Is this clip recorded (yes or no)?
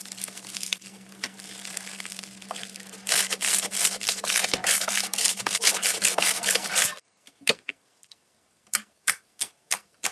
no